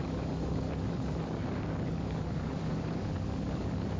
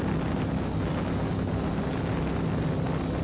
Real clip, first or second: second